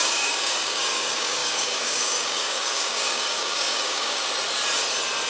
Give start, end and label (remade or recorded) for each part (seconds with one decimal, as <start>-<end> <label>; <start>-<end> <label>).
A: 0.0-4.2 remade; 4.2-5.3 recorded